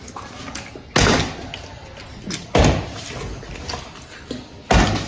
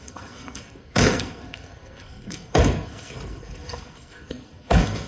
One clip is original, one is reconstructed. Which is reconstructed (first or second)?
second